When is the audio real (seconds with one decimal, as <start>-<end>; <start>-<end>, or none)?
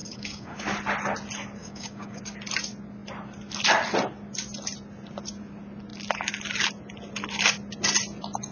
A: 0.6-1.6; 2.2-8.5